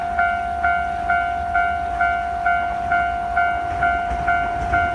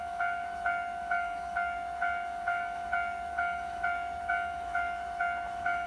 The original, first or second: first